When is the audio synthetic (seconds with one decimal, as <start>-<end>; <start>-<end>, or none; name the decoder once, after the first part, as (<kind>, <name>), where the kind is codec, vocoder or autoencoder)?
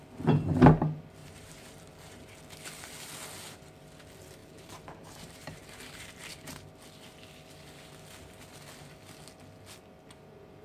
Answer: 1.2-2.4 (vocoder, BigVGAN v2); 4.4-6.7